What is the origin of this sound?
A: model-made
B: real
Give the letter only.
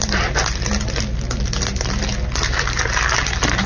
B